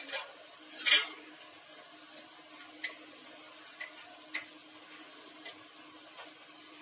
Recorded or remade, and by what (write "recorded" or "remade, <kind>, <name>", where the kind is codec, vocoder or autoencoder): recorded